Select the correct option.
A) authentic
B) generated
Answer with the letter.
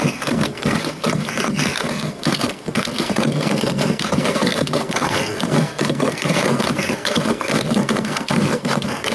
B